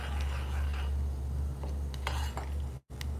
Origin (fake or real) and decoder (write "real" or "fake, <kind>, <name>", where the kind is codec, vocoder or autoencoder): real